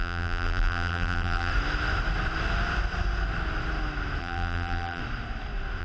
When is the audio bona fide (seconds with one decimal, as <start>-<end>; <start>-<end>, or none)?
1.5-4.2; 5.0-5.8